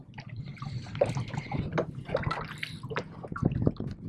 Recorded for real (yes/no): yes